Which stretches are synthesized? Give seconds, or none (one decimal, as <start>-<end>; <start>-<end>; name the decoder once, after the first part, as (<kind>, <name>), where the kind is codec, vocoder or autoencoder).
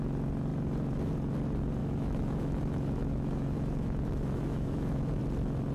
1.8-5.2 (autoencoder, DAC-VAE)